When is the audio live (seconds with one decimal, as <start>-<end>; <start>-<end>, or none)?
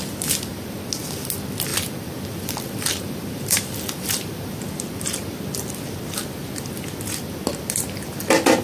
0.0-1.7; 4.7-8.6